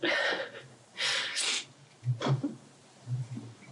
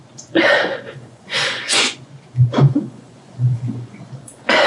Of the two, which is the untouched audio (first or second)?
first